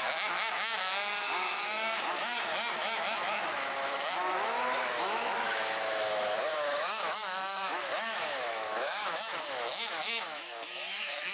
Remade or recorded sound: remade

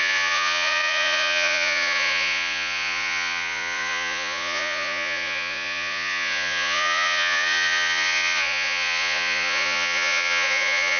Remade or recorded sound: remade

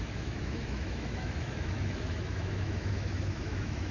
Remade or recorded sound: remade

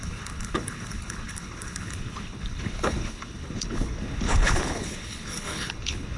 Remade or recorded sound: remade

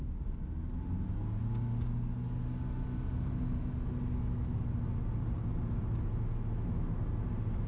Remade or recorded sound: recorded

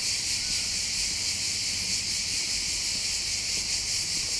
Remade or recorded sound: recorded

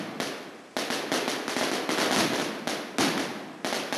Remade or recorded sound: recorded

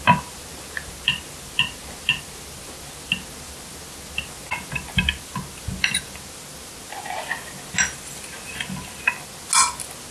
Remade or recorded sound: recorded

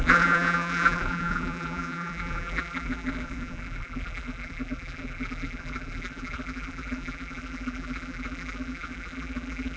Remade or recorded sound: remade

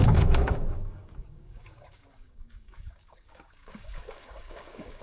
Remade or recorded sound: remade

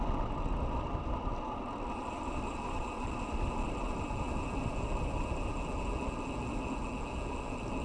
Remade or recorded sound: recorded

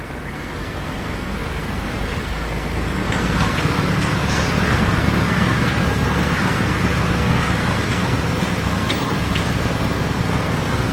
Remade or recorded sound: remade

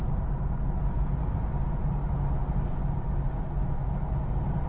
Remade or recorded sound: recorded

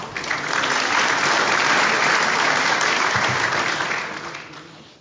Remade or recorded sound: remade